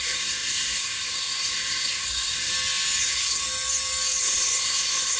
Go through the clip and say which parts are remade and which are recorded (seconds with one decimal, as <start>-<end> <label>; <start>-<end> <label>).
0.0-2.5 remade; 2.5-3.0 recorded; 3.0-3.4 remade; 3.4-4.2 recorded; 4.2-5.2 remade